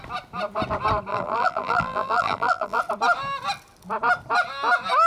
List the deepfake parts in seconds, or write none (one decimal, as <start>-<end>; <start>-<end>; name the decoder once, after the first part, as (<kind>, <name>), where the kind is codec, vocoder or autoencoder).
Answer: 1.1-2.8 (vocoder, BigVGAN v2)